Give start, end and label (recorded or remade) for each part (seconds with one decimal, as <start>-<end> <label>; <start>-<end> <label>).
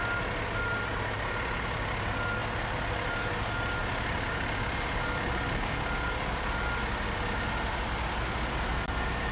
0.0-9.3 recorded